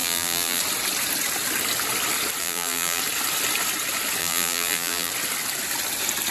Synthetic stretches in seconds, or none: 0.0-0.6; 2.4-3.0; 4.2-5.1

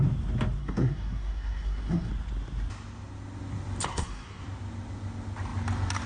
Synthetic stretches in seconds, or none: 0.6-2.1; 3.9-4.4